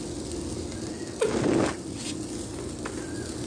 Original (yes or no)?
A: yes